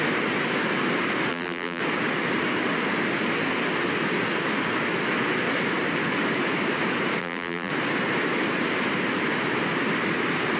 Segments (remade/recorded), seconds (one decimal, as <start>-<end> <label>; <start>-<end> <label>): 0.0-1.3 recorded; 1.3-1.8 remade; 1.8-7.2 recorded; 7.2-7.7 remade; 7.7-10.6 recorded

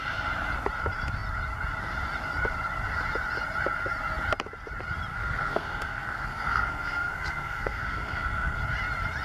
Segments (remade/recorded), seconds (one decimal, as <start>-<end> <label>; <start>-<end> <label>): 0.0-5.1 recorded; 5.1-8.6 remade; 8.6-9.2 recorded

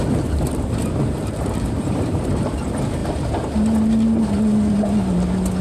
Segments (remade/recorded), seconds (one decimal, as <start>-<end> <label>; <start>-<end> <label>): 0.0-3.0 remade; 3.0-5.6 recorded

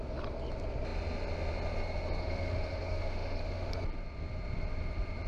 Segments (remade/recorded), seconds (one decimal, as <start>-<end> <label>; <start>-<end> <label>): 0.0-2.2 recorded; 2.2-3.7 remade; 3.7-5.3 recorded

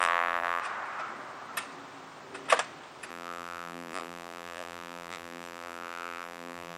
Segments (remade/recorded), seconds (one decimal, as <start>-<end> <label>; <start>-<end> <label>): 0.0-0.6 remade; 0.6-3.1 recorded; 3.1-6.8 remade